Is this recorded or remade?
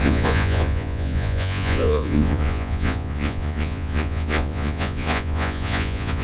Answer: remade